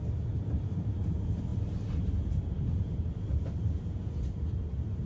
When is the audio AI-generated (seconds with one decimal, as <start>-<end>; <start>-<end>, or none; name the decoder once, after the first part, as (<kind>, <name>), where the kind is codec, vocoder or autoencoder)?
none